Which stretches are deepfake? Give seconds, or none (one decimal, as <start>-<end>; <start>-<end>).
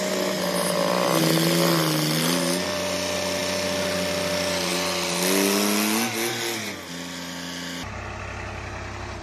none